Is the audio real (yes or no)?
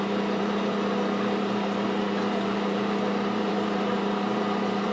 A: no